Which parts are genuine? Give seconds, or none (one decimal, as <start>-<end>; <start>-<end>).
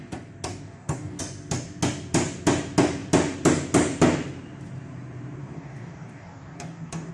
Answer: 0.0-0.5; 1.2-5.4